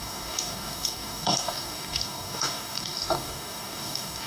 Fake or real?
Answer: fake